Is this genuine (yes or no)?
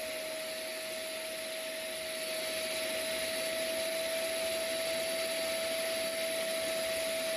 yes